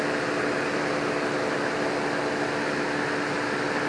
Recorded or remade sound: recorded